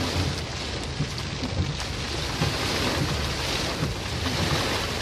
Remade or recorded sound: recorded